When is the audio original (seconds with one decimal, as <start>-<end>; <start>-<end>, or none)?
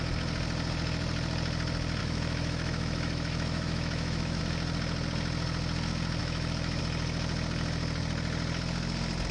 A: 0.0-2.0; 4.4-6.2; 6.8-9.3